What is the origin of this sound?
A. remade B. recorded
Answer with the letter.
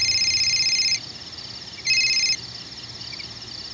B